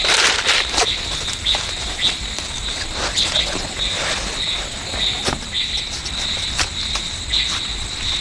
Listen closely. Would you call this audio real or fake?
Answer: real